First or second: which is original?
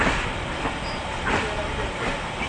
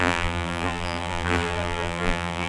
first